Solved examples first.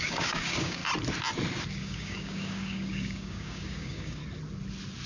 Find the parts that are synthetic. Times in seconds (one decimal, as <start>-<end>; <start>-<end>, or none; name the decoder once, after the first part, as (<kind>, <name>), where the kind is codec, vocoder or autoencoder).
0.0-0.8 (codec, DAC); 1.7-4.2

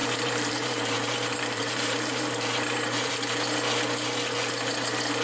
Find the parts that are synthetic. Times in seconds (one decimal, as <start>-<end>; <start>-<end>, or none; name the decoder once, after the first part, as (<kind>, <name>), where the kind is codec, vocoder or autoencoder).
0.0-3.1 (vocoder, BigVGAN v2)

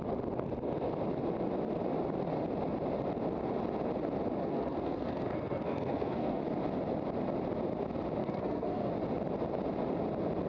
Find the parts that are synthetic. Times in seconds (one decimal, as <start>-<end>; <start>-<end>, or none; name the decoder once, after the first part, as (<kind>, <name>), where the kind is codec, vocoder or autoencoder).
4.4-6.4 (codec, SNAC); 8.2-8.9

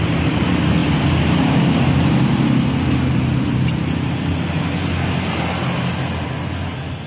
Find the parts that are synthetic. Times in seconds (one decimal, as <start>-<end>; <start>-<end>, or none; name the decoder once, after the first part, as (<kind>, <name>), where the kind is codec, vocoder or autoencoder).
none

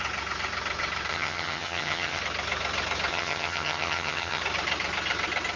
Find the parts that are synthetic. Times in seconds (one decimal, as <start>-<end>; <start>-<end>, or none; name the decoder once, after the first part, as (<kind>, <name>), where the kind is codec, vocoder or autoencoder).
1.1-2.2 (vocoder, HiFi-GAN); 3.1-4.4

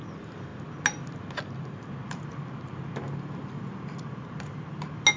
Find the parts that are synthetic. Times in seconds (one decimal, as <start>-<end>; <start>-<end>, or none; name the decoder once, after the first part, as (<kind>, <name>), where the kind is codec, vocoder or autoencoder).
none

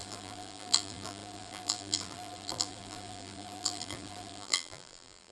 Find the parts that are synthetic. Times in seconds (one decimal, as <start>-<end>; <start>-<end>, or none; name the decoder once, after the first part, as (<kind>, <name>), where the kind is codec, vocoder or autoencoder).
0.0-5.3 (vocoder, BigVGAN v2)